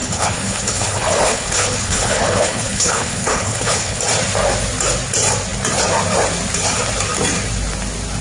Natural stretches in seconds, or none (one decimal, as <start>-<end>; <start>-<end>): 4.0-8.2